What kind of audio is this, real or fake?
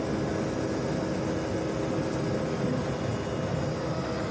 real